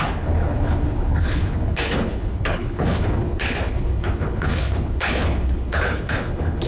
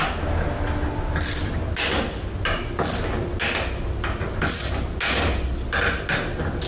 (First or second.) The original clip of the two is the second